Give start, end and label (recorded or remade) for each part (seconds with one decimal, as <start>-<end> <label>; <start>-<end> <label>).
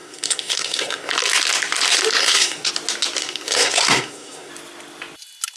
0.0-1.1 remade; 1.1-2.2 recorded; 2.2-2.7 remade; 2.7-3.2 recorded; 3.2-4.5 remade; 4.5-5.6 recorded